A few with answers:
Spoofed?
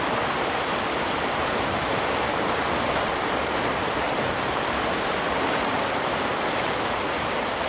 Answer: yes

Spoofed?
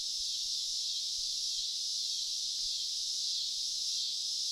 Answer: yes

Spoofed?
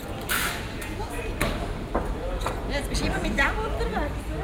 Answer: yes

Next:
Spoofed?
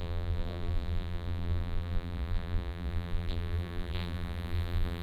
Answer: yes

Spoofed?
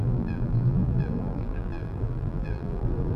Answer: yes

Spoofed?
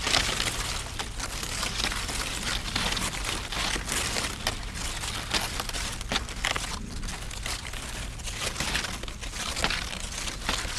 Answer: no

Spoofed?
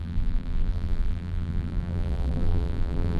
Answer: yes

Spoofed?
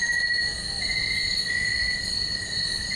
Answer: yes